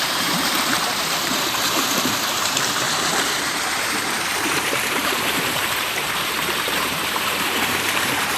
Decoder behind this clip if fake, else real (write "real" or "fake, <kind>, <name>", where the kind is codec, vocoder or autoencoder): fake, vocoder, BigVGAN v2